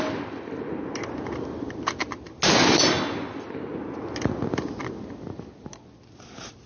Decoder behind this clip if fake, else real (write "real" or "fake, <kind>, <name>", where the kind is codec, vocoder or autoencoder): real